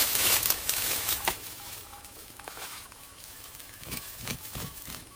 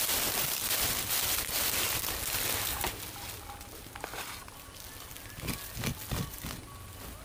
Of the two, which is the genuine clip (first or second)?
second